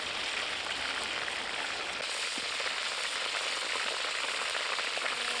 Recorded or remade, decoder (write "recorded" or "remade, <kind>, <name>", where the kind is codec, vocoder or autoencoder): recorded